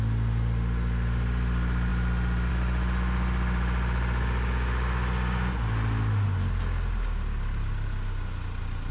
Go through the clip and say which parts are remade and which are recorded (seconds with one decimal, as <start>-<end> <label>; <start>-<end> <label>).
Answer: 0.0-8.9 recorded

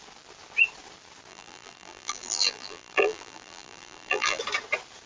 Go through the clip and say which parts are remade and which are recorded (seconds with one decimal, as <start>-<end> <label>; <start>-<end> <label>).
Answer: 0.0-1.3 recorded; 1.3-4.4 remade; 4.4-5.1 recorded